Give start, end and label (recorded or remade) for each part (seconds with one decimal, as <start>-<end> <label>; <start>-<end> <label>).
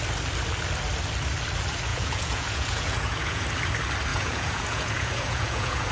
0.0-1.9 recorded; 1.9-3.4 remade; 3.4-4.1 recorded; 4.1-5.9 remade